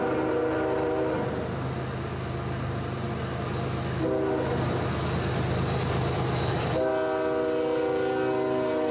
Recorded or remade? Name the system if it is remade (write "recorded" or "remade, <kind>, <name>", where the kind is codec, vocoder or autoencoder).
recorded